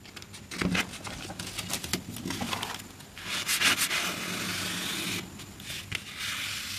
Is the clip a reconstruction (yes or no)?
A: no